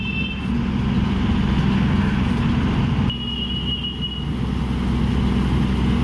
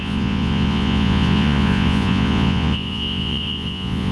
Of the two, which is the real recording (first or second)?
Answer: first